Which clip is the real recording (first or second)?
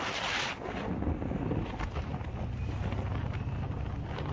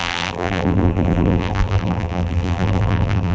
first